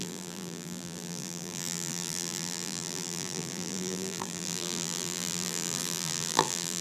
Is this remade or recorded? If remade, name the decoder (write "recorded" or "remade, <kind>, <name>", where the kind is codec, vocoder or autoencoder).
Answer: remade, vocoder, BigVGAN v2